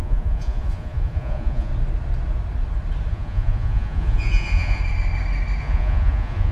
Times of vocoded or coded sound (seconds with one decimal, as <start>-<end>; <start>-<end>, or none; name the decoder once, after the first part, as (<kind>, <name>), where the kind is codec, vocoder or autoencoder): 0.0-1.7 (vocoder, Vocos); 3.1-4.8; 5.6-6.5